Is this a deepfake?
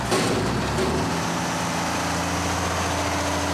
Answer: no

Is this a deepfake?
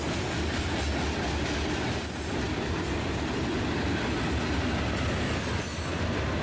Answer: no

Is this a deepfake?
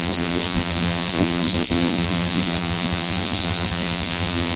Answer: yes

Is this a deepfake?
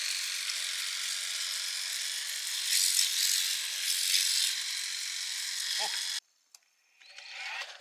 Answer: no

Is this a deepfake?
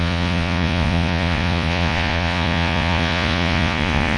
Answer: yes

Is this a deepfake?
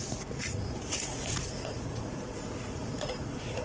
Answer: yes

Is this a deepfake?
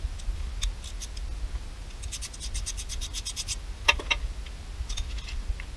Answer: no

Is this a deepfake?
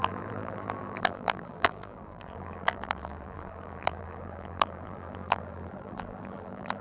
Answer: yes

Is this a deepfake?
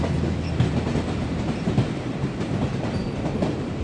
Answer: yes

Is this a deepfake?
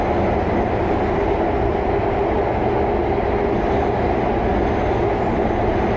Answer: no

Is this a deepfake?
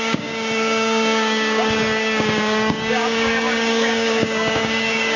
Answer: yes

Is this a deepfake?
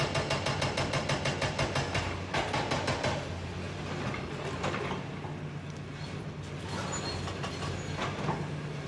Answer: no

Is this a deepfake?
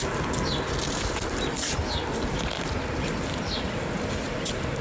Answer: no